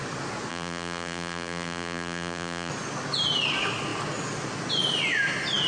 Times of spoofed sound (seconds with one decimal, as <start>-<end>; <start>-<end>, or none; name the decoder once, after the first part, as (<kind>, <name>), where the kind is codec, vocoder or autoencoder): 0.5-2.7 (vocoder, BigVGAN v2)